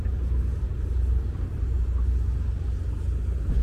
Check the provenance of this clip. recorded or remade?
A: recorded